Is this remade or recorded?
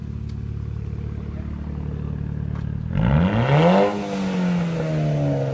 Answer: recorded